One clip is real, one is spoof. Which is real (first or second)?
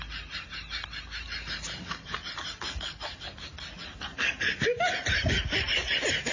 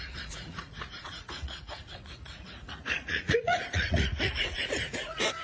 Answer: first